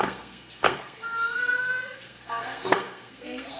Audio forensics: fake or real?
fake